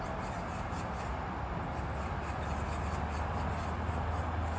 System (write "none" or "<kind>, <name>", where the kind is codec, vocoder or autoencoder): none